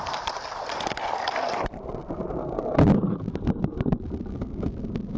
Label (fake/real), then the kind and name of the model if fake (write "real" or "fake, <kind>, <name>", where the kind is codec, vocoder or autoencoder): real